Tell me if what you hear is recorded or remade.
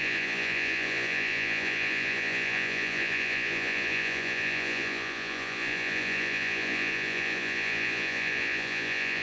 remade